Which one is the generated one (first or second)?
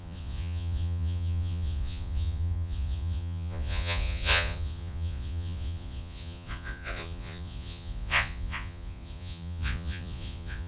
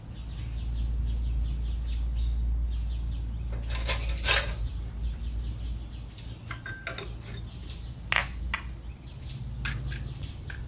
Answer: first